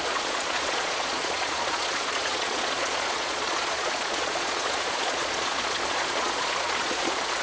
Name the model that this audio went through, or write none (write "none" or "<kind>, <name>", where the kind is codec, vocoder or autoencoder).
vocoder, Vocos